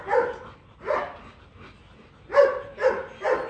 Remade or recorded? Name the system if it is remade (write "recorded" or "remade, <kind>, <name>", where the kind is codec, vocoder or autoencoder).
recorded